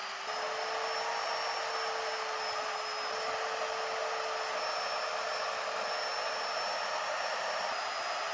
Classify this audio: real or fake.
real